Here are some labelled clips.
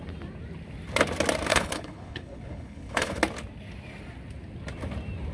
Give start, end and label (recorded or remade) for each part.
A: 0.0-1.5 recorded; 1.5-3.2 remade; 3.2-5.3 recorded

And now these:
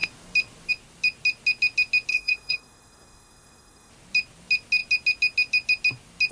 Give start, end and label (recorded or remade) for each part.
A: 0.0-2.1 recorded; 2.1-3.9 remade; 3.9-6.3 recorded

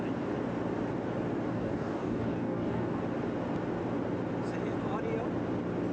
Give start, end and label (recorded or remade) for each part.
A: 0.0-1.5 recorded; 1.5-3.0 remade; 3.0-5.9 recorded

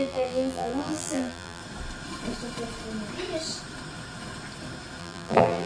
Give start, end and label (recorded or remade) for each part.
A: 0.0-1.6 remade; 1.6-5.0 recorded; 5.0-5.7 remade

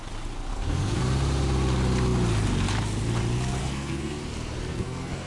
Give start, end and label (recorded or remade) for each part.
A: 0.0-0.5 recorded; 0.5-1.0 remade; 1.0-3.6 recorded; 3.6-4.2 remade; 4.2-4.7 recorded; 4.7-5.3 remade

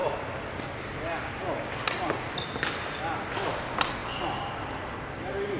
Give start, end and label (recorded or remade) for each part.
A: 0.0-5.6 recorded

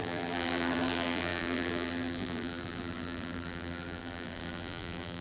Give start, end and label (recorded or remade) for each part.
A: 0.0-5.2 remade